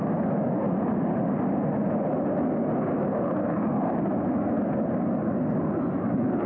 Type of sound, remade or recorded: recorded